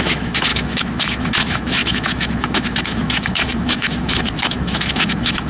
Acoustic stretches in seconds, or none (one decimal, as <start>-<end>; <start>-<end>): none